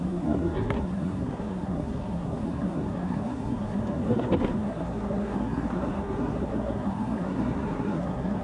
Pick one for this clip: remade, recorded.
remade